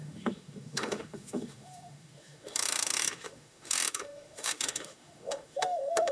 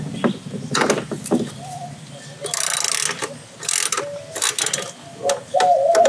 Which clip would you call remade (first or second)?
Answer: first